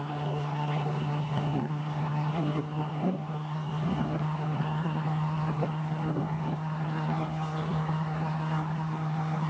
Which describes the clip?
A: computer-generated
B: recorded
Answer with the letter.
A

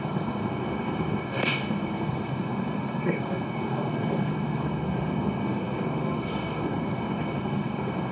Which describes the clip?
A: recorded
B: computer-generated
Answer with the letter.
B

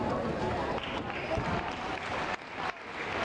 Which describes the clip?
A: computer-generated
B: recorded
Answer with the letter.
B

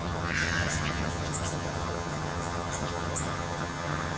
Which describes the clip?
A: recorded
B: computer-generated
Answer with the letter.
B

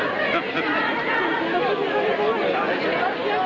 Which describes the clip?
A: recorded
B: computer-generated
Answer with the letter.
A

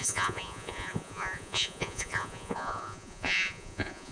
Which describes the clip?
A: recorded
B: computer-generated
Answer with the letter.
B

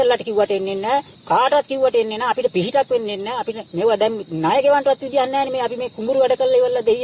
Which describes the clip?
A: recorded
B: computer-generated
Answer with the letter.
A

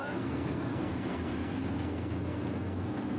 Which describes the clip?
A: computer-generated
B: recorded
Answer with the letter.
A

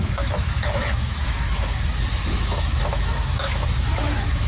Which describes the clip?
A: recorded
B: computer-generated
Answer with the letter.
B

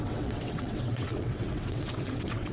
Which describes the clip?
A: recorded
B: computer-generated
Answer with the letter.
B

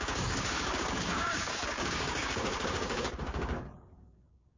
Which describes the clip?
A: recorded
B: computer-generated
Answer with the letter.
B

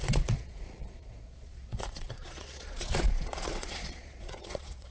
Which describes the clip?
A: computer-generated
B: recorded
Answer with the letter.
A